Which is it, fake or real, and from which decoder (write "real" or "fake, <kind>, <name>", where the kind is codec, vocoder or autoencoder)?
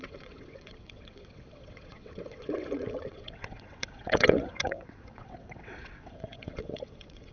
fake, vocoder, WaveNeXt